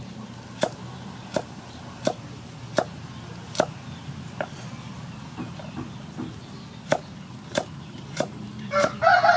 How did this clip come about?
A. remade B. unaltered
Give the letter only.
B